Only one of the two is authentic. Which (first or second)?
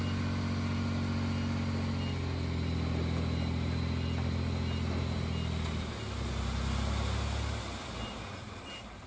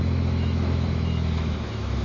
first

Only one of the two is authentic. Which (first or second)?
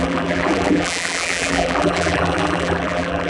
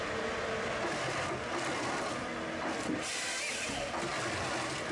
second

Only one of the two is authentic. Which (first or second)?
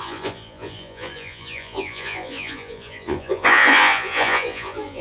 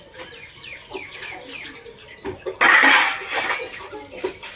second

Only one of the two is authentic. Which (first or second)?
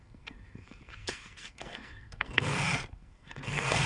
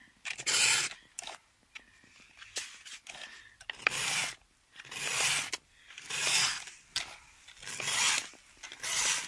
second